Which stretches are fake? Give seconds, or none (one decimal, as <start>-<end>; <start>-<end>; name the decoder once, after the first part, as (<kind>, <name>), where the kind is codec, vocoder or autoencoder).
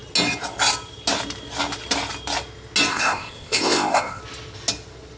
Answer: 2.9-4.2 (codec, ZipCodec)